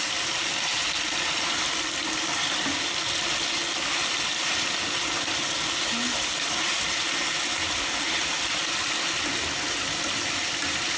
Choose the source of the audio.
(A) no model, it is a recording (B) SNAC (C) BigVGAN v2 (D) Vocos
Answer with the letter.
A